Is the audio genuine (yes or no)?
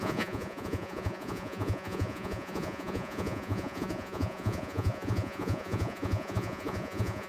no